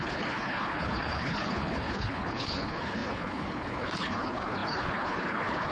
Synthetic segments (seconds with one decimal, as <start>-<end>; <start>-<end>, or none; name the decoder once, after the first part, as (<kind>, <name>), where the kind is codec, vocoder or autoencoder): 0.0-5.7 (codec, HILCodec)